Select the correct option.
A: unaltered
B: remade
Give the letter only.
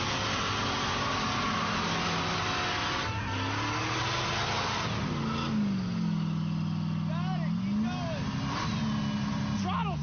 A